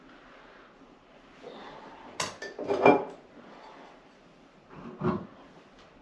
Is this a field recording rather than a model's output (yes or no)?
yes